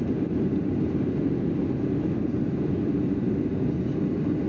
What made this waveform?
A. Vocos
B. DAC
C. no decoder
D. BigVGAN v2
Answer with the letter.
C